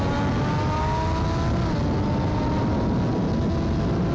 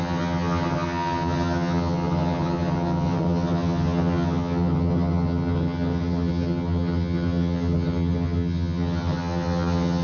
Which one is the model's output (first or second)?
second